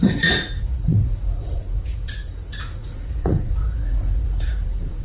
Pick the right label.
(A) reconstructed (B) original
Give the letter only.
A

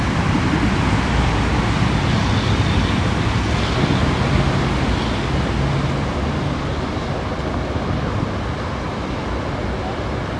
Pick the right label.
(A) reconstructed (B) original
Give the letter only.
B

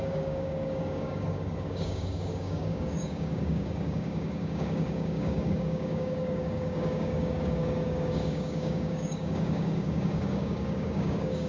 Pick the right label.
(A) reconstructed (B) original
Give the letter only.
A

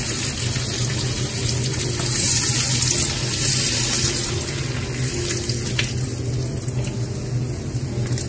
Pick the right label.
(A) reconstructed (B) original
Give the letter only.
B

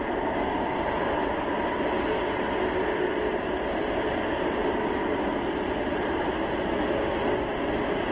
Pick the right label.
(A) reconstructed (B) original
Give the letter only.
B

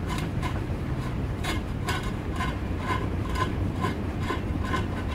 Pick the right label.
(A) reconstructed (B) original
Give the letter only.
A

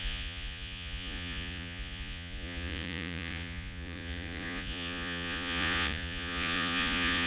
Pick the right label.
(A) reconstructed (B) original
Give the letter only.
A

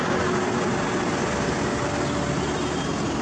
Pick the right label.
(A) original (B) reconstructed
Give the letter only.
A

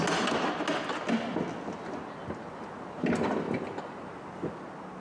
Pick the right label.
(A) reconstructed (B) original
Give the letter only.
B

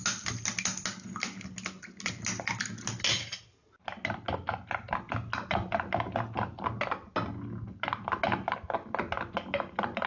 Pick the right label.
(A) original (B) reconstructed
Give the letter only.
A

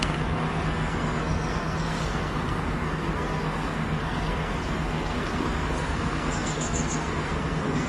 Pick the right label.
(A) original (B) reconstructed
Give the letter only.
B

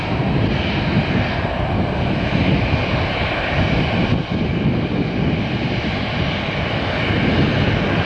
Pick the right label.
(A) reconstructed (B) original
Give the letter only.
B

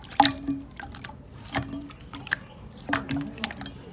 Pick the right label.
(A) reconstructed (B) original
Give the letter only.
B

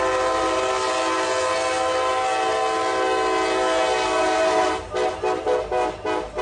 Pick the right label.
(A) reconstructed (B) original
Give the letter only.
B